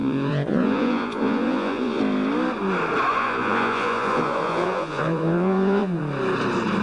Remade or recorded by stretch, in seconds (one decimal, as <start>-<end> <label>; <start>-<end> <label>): 0.0-2.0 remade; 2.0-3.1 recorded; 3.1-6.0 remade; 6.0-6.8 recorded